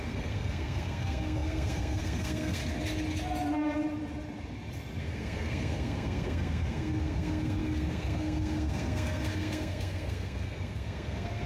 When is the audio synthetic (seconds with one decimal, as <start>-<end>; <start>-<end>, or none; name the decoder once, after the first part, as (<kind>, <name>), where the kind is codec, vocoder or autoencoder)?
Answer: 0.0-2.6 (codec, SNAC); 5.0-11.5